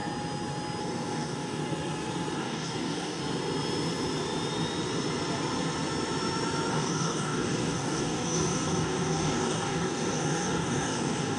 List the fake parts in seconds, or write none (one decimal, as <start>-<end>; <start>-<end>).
0.8-1.6; 2.4-3.2; 6.7-11.4